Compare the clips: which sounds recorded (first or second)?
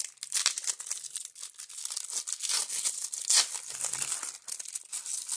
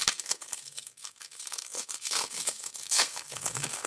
first